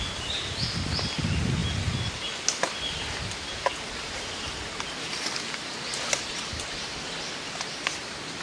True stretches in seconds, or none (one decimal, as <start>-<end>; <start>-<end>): 0.0-8.4